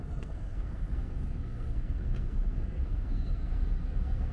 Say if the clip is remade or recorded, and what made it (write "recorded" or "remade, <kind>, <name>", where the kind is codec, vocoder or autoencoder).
remade, codec, SNAC